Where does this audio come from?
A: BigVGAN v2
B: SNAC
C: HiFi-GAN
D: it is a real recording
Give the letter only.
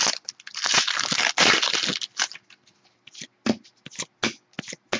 D